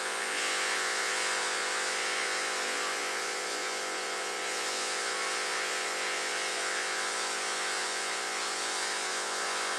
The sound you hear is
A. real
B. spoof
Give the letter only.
B